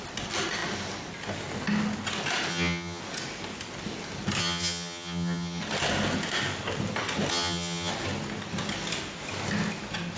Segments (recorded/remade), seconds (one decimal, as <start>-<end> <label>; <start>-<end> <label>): 0.0-2.5 recorded; 2.5-3.0 remade; 3.0-4.4 recorded; 4.4-5.6 remade; 5.6-7.3 recorded; 7.3-7.9 remade; 7.9-10.2 recorded